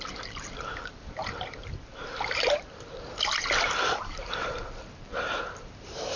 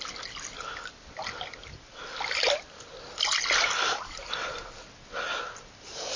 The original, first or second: second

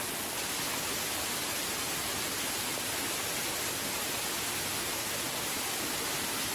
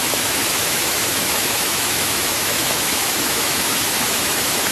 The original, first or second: first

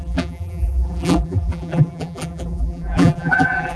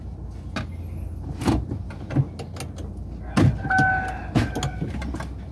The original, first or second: second